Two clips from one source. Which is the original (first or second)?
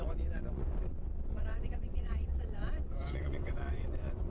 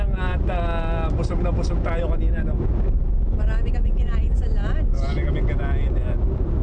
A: second